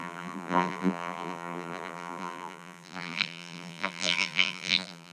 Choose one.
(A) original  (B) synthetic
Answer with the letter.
B